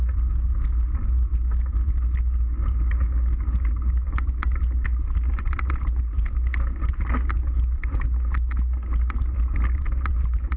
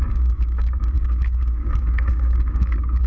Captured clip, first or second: first